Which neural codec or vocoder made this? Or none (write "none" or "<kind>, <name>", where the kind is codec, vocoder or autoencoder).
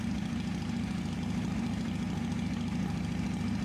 none